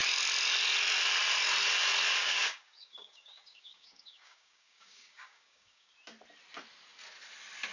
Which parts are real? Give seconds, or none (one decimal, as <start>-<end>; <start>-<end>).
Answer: 0.0-2.2; 5.9-7.7